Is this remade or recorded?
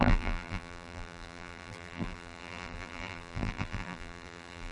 remade